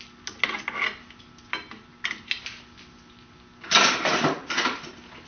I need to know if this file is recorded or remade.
recorded